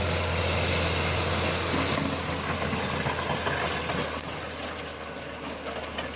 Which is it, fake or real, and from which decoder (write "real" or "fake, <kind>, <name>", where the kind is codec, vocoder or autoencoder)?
real